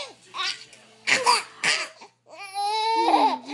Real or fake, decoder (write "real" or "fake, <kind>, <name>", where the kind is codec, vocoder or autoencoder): real